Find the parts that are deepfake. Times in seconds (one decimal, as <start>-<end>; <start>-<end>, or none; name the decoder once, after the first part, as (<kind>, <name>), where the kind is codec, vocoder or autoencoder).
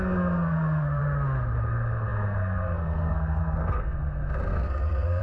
0.0-1.0 (codec, SNAC); 1.6-5.2